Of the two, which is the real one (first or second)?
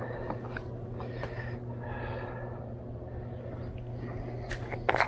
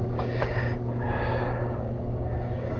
first